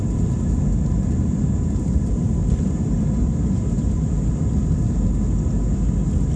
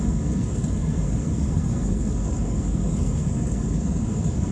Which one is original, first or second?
first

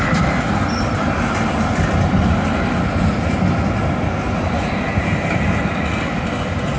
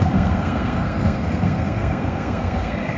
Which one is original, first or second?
first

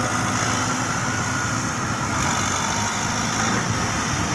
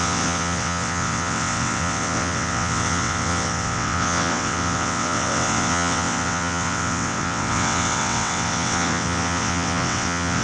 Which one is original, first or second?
first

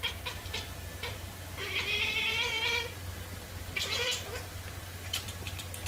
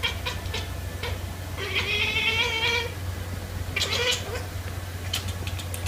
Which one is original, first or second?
second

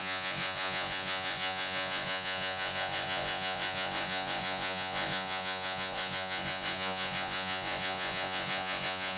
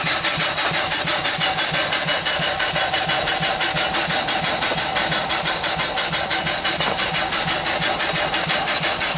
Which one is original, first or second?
second